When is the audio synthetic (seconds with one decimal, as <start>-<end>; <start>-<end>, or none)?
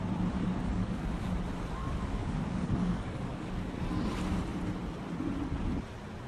0.4-1.3; 1.8-3.8